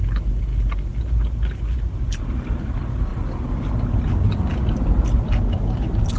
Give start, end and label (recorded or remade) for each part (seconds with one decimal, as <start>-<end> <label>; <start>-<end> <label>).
0.0-6.2 recorded